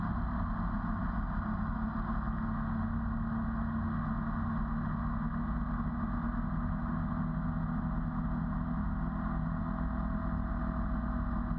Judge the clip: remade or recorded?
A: recorded